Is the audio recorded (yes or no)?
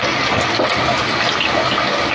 yes